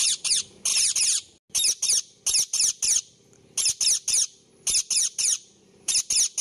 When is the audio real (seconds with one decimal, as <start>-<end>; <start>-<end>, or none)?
0.0-5.0; 5.9-6.4